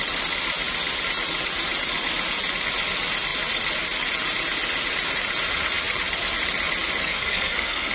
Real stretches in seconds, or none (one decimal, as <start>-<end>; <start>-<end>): 0.0-7.0